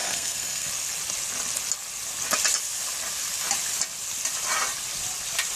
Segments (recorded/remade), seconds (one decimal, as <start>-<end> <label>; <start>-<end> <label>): 0.0-0.7 remade; 0.7-5.6 recorded